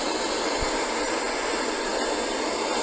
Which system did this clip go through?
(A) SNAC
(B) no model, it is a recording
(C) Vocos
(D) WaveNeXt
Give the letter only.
B